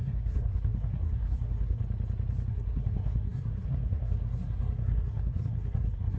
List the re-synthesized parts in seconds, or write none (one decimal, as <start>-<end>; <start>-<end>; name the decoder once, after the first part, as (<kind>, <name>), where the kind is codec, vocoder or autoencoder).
0.0-1.8 (codec, SNAC); 2.5-6.2